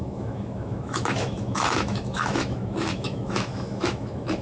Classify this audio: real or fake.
fake